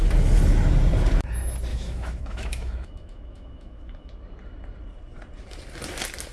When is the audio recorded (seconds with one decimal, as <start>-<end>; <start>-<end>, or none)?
0.0-1.7; 4.1-6.3